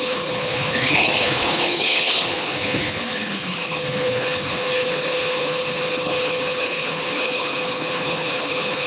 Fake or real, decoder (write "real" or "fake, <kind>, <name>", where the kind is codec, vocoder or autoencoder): fake, codec, HILCodec